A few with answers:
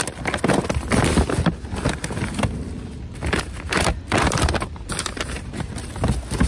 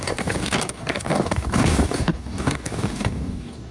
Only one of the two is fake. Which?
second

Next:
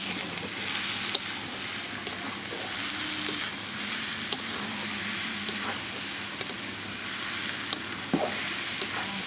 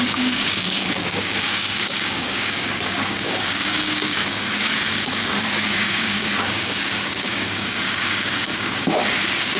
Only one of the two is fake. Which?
second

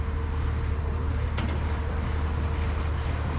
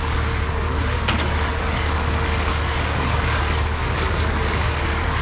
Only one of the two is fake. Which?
second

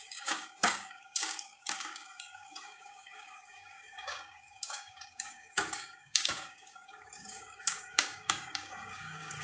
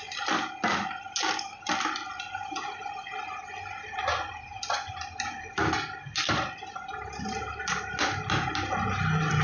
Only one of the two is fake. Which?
first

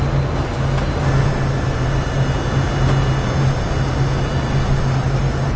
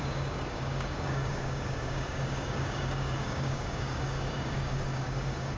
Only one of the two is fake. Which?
second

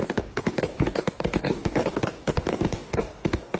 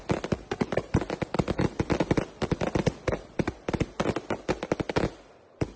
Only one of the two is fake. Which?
first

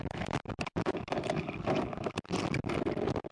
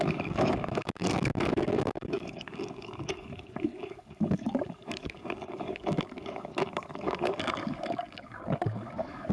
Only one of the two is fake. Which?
second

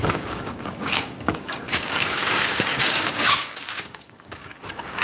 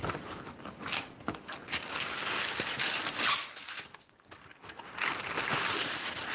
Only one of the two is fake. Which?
first